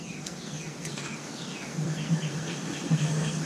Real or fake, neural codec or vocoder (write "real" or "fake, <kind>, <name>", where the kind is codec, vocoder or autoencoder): fake, codec, SNAC